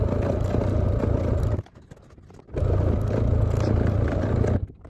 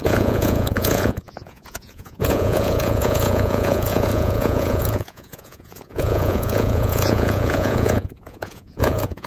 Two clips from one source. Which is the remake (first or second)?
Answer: second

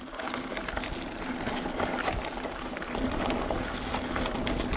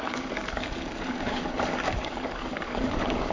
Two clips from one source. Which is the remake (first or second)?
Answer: second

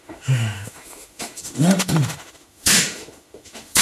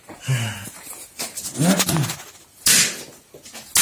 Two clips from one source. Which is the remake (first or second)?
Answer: first